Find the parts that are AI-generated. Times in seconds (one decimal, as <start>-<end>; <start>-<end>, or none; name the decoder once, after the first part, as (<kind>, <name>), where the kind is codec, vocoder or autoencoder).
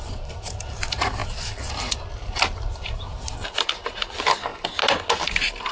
0.0-4.5 (vocoder, BigVGAN v2); 5.3-5.7